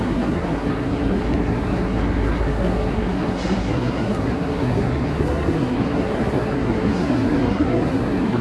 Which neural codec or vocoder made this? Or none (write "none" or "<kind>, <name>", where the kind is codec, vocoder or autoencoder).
codec, SNAC